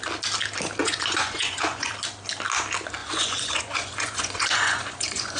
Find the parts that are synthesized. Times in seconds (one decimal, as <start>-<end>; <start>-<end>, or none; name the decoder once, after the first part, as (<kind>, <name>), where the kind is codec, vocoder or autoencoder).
0.8-1.9 (vocoder, Vocos); 3.0-5.4